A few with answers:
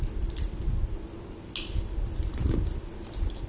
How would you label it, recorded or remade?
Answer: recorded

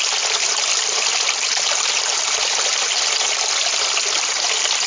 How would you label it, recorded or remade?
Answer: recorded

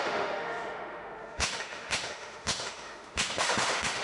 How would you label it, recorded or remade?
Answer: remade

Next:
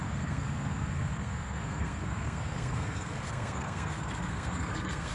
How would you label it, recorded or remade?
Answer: remade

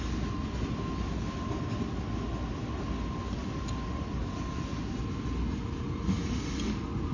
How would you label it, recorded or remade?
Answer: recorded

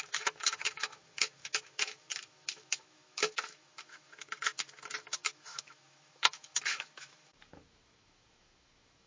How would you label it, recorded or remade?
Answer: remade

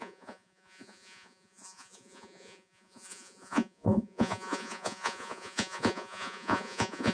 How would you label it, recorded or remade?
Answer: remade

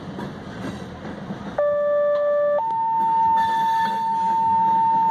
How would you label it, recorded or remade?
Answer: recorded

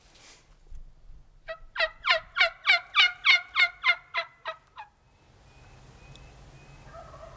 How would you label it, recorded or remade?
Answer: recorded